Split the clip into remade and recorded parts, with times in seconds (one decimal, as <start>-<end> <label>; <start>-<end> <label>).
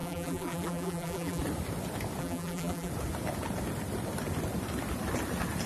0.0-1.4 remade; 1.4-2.2 recorded; 2.2-2.9 remade; 2.9-5.7 recorded